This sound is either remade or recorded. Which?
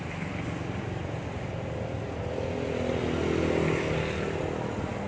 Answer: recorded